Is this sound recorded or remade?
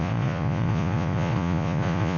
remade